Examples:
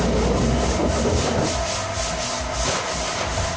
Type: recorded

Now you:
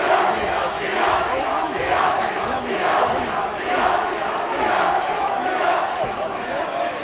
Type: remade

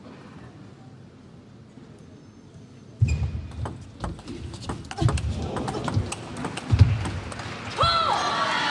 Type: recorded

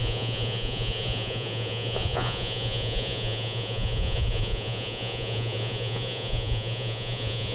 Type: remade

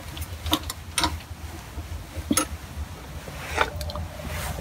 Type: recorded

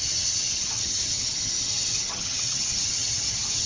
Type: remade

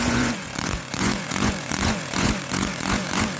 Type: remade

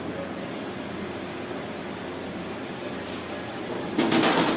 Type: recorded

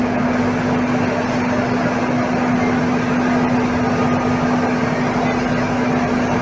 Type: recorded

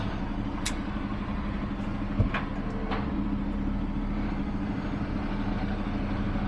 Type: recorded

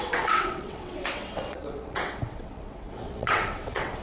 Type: remade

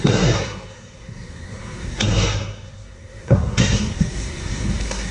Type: remade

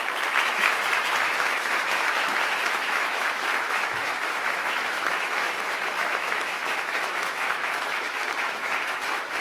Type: remade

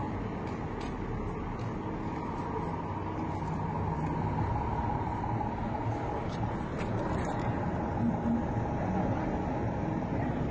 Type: recorded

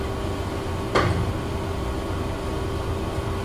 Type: recorded